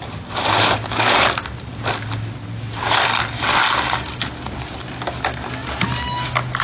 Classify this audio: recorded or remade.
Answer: remade